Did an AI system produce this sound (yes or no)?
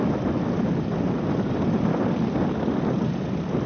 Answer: no